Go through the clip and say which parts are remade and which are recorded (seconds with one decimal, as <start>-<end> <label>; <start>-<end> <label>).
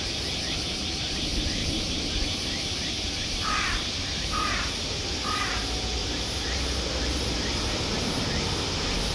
0.0-1.3 recorded; 1.3-5.0 remade; 5.0-6.0 recorded; 6.0-7.8 remade; 7.8-9.1 recorded